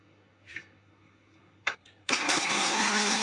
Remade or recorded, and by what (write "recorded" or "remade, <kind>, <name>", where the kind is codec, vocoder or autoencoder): remade, codec, SNAC